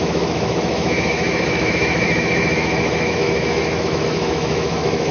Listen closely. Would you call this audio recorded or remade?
remade